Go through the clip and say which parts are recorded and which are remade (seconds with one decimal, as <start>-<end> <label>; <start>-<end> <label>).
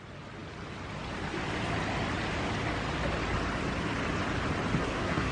0.0-4.8 recorded; 4.8-5.3 remade